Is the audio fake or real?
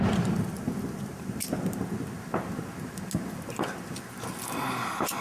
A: real